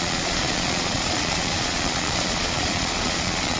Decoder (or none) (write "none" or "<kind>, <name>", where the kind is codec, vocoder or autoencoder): vocoder, Vocos